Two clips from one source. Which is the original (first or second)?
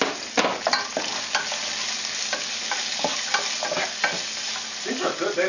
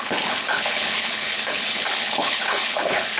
first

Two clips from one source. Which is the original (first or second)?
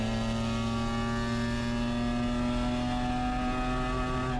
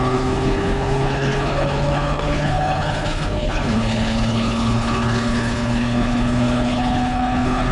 first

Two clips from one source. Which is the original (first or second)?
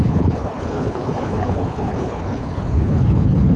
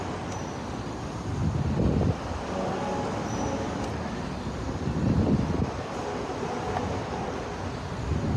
second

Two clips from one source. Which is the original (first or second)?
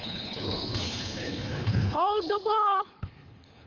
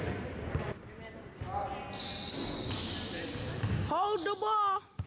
second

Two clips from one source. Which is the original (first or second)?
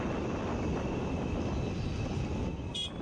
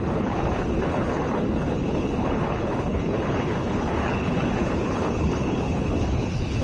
first